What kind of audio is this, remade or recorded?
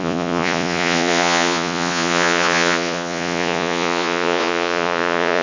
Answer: remade